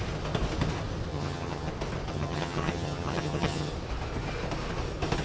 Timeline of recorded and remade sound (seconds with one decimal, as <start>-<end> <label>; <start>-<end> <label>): 0.0-1.1 recorded; 1.1-1.7 remade; 1.7-2.1 recorded; 2.1-3.7 remade; 3.7-5.2 recorded